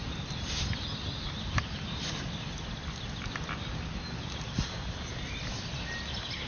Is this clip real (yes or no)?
yes